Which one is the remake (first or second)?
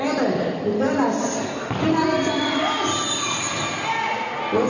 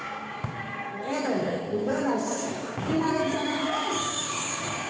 second